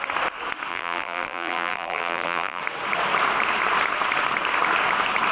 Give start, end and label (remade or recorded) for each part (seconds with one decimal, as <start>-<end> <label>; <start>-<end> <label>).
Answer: 0.0-0.7 recorded; 0.7-2.6 remade; 2.6-5.3 recorded